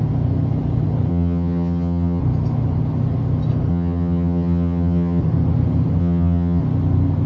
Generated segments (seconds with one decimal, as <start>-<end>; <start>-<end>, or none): 1.1-2.2; 3.7-5.2; 6.0-6.6